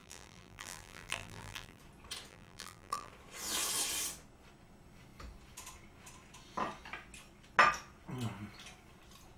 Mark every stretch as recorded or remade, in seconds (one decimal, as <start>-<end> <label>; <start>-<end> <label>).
0.0-1.8 remade; 1.8-2.3 recorded; 2.3-3.1 remade; 3.1-9.4 recorded

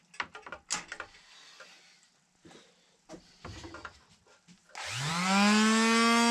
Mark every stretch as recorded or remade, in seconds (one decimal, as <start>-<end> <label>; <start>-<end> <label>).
0.0-6.3 recorded

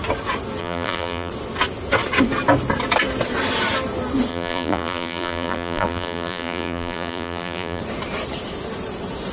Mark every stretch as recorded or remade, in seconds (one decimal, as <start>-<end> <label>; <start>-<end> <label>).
0.0-0.6 recorded; 0.6-1.3 remade; 1.3-4.3 recorded; 4.3-7.8 remade; 7.8-9.3 recorded

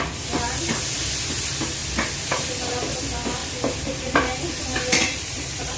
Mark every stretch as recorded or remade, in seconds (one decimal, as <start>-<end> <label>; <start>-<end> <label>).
0.0-3.4 recorded; 3.4-5.8 remade

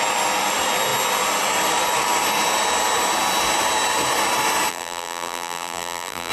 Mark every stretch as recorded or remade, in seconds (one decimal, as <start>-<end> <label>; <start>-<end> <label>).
0.0-4.7 recorded; 4.7-6.3 remade